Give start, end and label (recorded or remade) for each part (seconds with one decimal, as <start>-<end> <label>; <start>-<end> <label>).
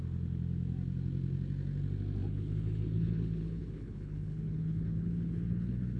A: 0.0-2.2 recorded; 2.2-6.0 remade